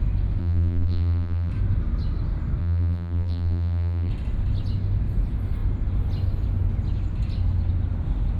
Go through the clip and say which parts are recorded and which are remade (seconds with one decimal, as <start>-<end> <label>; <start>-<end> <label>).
0.0-0.4 recorded; 0.4-1.5 remade; 1.5-2.6 recorded; 2.6-4.1 remade; 4.1-8.4 recorded